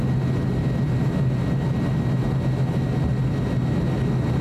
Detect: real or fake real